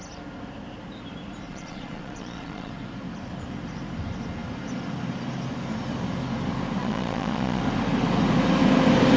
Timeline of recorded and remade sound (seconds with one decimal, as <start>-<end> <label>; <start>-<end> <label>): 0.0-1.5 recorded; 1.5-2.7 remade; 2.7-6.8 recorded; 6.8-7.6 remade; 7.6-9.2 recorded